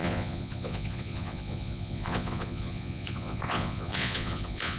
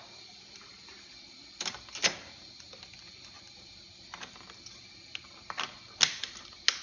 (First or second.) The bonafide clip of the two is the second